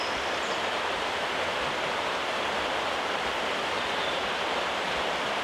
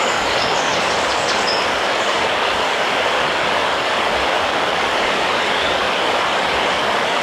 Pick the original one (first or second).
first